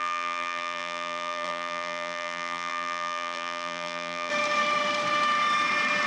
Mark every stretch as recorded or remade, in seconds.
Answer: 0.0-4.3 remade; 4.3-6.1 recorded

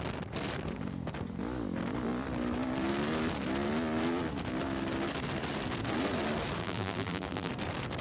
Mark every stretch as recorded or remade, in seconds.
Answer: 0.0-6.6 recorded; 6.6-7.5 remade; 7.5-8.0 recorded

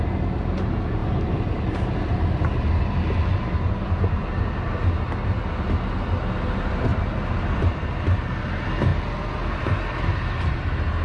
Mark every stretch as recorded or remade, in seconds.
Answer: 0.0-1.0 recorded; 1.0-2.7 remade; 2.7-6.9 recorded; 6.9-8.0 remade; 8.0-11.0 recorded